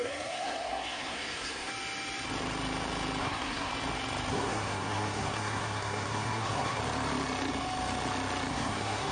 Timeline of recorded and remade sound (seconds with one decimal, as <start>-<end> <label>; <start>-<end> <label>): 0.0-1.7 remade; 1.7-3.2 recorded; 3.2-3.7 remade; 3.7-4.3 recorded; 4.3-6.8 remade; 6.8-8.5 recorded; 8.5-9.1 remade